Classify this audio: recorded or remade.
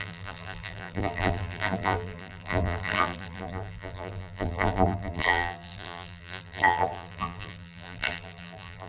remade